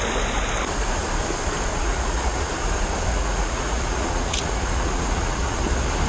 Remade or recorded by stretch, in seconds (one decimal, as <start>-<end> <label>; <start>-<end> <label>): 0.0-1.7 recorded; 1.7-2.5 remade; 2.5-3.1 recorded; 3.1-5.6 remade; 5.6-6.1 recorded